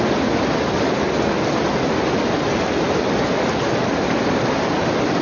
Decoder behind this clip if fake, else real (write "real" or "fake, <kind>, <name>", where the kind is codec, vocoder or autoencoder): real